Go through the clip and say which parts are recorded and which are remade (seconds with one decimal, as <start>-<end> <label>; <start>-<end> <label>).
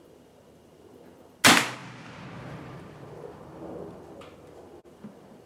0.0-5.5 recorded